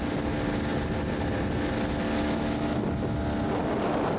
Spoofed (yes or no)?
no